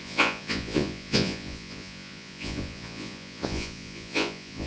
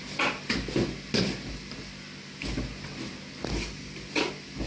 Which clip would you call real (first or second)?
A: second